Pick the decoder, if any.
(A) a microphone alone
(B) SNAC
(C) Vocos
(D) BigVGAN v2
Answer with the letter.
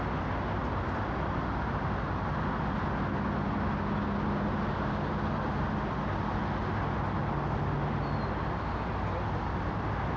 A